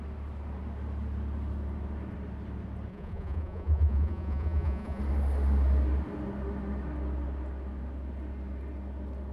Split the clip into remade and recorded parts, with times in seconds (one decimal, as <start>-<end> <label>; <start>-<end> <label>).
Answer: 0.0-2.9 recorded; 2.9-5.0 remade; 5.0-9.3 recorded